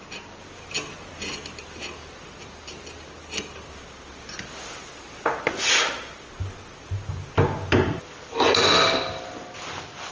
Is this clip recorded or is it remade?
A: recorded